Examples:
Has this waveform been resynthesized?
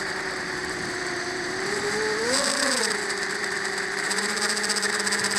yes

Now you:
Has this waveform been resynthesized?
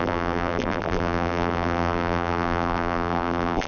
yes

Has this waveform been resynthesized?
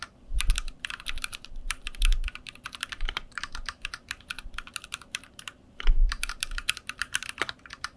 yes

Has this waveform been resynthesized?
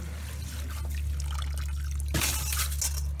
no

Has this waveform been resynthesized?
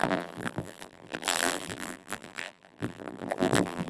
yes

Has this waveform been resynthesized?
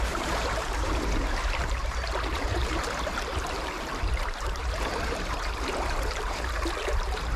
yes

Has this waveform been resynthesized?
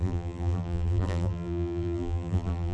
yes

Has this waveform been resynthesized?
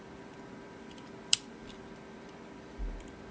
yes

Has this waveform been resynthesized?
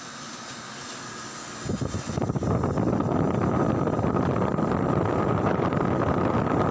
yes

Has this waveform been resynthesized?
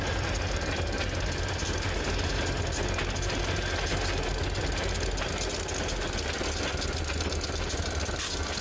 no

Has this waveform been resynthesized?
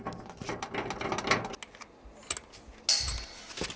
no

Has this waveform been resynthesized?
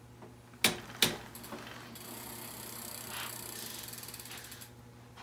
no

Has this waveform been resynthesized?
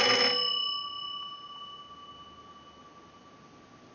no